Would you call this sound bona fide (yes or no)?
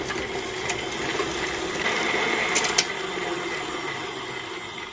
yes